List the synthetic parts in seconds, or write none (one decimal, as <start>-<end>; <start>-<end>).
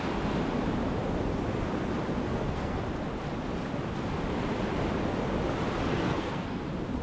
2.2-2.8; 5.9-6.6